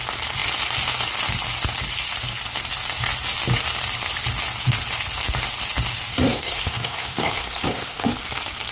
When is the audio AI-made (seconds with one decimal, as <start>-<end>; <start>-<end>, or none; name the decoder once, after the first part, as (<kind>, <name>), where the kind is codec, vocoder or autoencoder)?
6.1-8.1 (codec, SNAC)